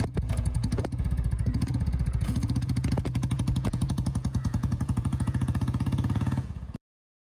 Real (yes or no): no